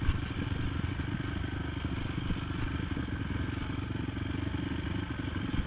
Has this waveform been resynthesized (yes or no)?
no